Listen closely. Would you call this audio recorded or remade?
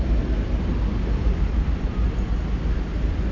recorded